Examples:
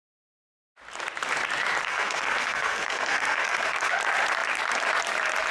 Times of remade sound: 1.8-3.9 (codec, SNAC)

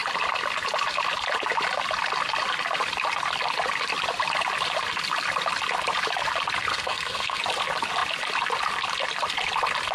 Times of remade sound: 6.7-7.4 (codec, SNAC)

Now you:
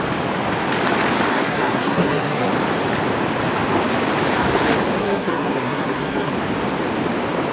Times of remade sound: 1.3-2.5 (codec, SNAC); 5.0-6.3